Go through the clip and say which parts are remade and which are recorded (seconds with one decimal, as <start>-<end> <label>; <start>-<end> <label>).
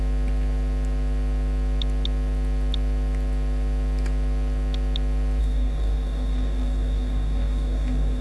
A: 0.0-5.4 recorded; 5.4-8.2 remade